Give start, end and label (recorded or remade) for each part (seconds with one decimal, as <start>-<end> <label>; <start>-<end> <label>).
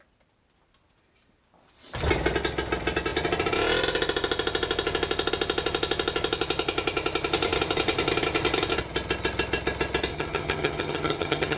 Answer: 0.0-10.1 recorded; 10.1-11.6 remade